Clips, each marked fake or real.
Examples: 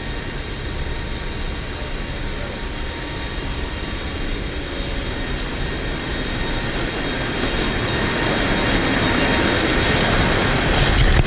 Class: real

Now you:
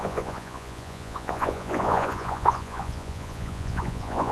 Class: fake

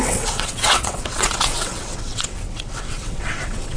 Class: fake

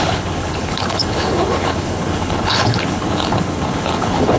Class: fake